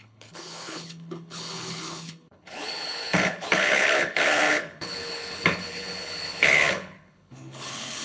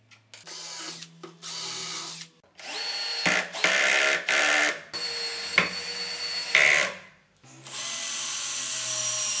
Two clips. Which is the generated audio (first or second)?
first